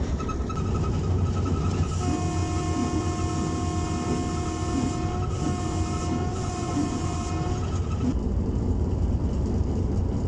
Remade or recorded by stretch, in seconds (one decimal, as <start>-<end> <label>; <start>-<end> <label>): 0.0-6.3 recorded; 6.3-7.3 remade; 7.3-10.3 recorded